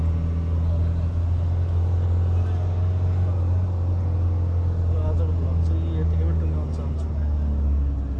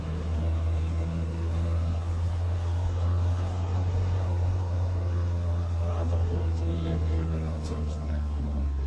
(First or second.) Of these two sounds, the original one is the first